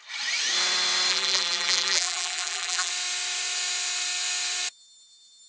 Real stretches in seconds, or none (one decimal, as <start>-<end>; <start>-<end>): 0.0-1.1; 2.9-5.5